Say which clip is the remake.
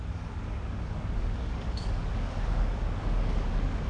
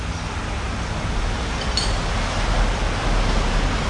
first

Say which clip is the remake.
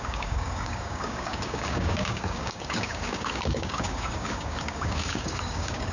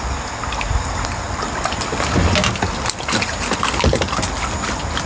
first